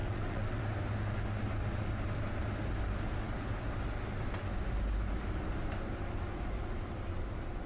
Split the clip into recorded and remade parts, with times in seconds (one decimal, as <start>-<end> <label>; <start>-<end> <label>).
0.0-0.6 remade; 0.6-7.7 recorded